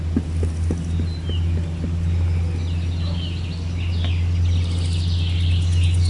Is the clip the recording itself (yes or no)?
yes